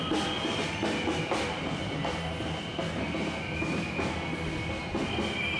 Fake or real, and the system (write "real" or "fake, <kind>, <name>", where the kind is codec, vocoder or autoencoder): real